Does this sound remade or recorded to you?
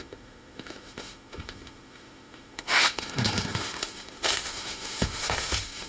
remade